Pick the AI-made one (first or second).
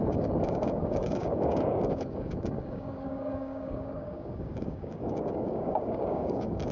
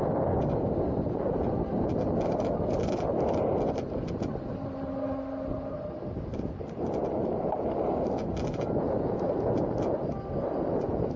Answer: first